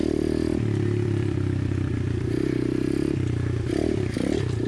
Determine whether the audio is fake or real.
fake